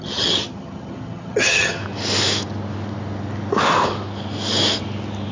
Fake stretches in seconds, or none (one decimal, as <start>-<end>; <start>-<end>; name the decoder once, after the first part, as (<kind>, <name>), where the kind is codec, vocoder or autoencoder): 0.0-1.8 (vocoder, HiFi-GAN)